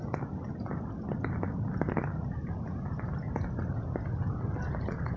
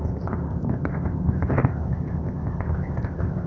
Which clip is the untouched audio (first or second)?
first